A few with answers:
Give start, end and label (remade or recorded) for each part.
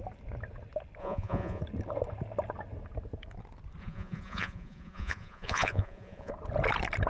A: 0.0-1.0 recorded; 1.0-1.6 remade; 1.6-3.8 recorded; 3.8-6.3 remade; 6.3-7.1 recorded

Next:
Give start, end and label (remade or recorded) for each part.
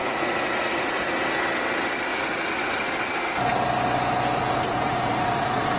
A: 0.0-1.1 remade; 1.1-2.1 recorded; 2.1-2.9 remade; 2.9-4.4 recorded; 4.4-5.8 remade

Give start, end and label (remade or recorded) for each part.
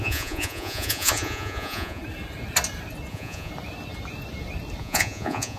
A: 0.0-2.0 remade; 2.0-3.1 recorded; 3.1-3.5 remade; 3.5-4.8 recorded; 4.8-5.6 remade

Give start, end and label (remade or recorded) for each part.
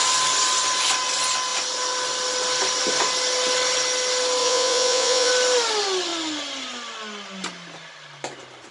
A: 0.0-4.4 recorded; 4.4-5.3 remade; 5.3-8.7 recorded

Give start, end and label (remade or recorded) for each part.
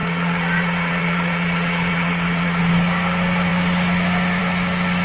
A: 0.0-2.6 remade; 2.6-5.0 recorded